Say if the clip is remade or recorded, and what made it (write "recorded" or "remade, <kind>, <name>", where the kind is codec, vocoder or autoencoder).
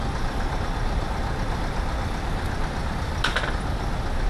recorded